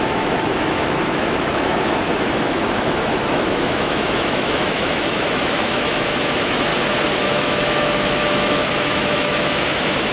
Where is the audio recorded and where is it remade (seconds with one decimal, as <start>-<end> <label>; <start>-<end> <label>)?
0.0-6.7 remade; 6.7-7.2 recorded; 7.2-10.1 remade